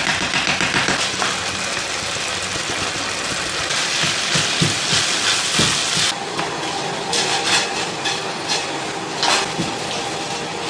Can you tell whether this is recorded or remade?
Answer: recorded